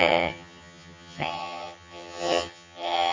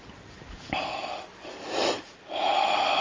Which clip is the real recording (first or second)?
second